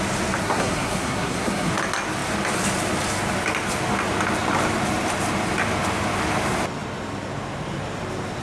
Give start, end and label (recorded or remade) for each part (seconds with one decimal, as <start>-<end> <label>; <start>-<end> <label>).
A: 0.0-0.4 recorded; 0.4-1.7 remade; 1.7-8.4 recorded